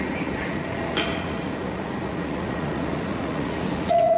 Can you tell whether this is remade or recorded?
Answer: remade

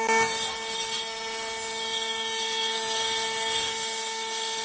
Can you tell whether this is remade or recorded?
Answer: recorded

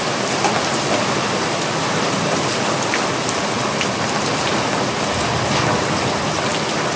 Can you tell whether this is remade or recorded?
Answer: recorded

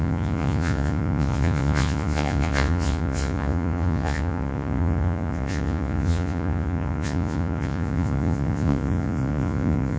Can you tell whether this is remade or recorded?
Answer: remade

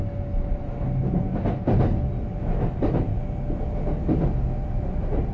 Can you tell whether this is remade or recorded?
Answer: recorded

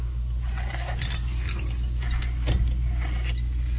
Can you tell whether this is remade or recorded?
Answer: recorded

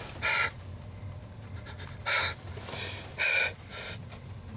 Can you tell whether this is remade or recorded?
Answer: recorded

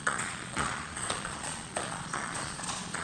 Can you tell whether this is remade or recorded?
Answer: remade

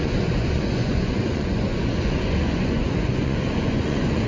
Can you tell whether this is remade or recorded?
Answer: remade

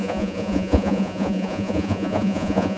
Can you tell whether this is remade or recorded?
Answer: remade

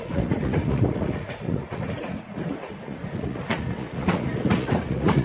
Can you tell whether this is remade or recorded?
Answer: remade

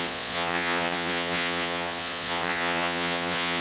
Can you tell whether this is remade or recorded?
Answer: remade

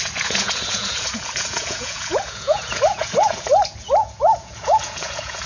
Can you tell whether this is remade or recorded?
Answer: remade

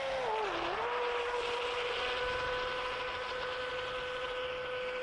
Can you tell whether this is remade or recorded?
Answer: recorded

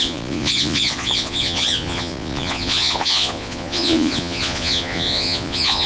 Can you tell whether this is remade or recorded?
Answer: remade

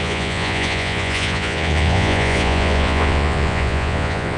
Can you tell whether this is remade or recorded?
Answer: remade